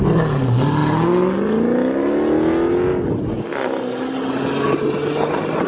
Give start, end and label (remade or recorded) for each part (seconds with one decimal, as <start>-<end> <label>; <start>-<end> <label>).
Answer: 0.0-5.7 recorded